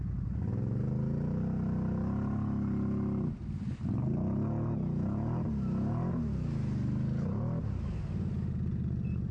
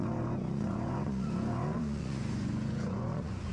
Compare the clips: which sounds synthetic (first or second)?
second